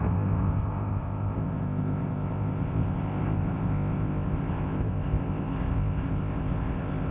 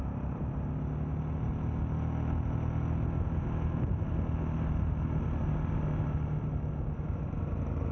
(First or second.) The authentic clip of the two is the second